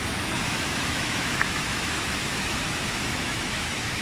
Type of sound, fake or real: fake